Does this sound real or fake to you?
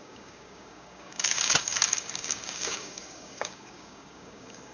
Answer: fake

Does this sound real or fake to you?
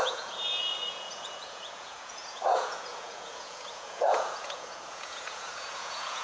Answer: fake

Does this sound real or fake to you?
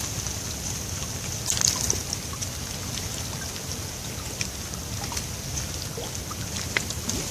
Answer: real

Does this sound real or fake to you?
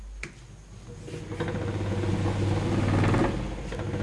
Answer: real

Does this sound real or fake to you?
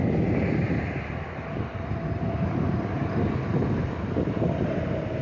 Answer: real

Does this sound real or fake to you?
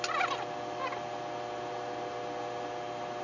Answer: real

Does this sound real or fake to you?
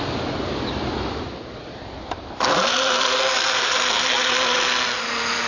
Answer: real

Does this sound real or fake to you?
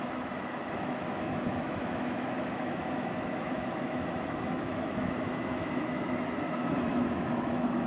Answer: fake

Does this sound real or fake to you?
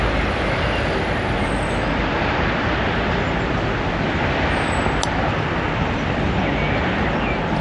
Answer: real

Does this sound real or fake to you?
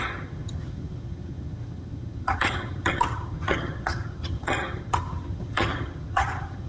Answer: fake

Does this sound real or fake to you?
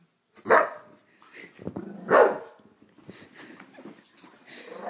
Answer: real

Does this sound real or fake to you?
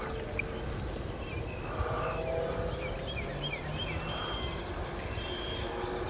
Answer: real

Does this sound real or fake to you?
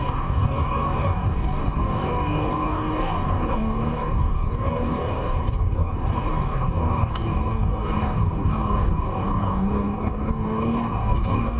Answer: fake